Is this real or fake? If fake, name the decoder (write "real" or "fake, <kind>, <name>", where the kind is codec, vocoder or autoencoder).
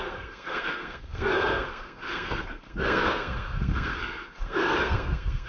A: fake, codec, SNAC